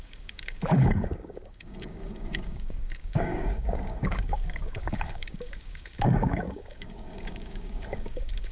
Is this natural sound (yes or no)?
no